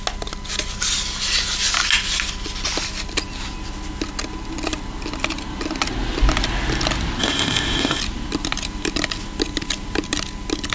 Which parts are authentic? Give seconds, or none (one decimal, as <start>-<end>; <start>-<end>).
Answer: 0.0-7.2; 8.0-10.7